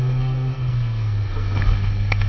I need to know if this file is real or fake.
fake